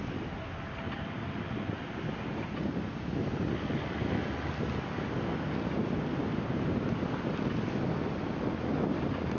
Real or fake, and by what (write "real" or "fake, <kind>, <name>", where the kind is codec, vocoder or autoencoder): real